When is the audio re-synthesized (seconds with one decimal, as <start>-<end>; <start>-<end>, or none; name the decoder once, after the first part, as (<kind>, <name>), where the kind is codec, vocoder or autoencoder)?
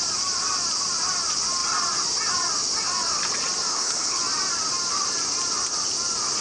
3.7-4.2 (codec, HILCodec)